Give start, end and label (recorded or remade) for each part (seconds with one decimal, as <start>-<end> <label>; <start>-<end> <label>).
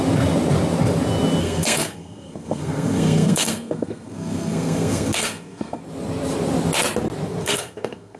0.0-1.4 recorded; 1.4-5.8 remade; 5.8-7.4 recorded; 7.4-8.2 remade